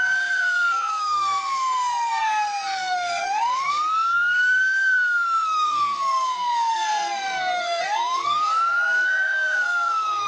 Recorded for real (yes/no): no